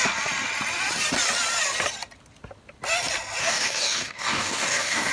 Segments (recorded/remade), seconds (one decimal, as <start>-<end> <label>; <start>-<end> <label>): 0.0-3.4 recorded; 3.4-5.1 remade